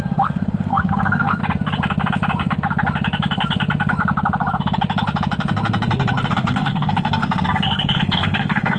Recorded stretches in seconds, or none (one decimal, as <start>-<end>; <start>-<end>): 1.4-6.3